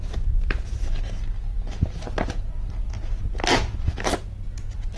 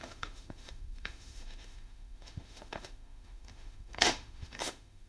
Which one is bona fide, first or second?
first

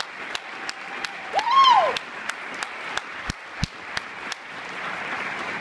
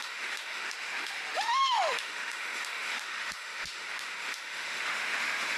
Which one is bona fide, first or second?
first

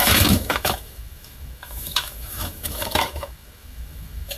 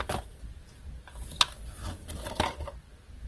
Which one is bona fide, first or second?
second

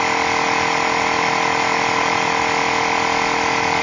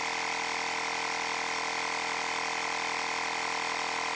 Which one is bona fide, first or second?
second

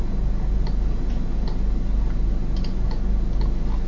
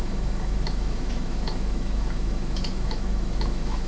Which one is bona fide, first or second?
first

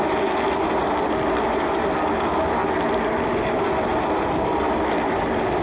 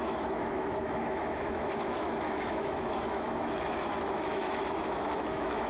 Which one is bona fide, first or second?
first